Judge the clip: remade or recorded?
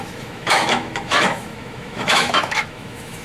remade